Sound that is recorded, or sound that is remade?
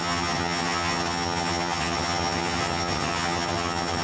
remade